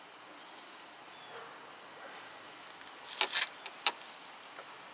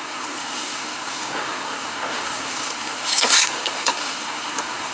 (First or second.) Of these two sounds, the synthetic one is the second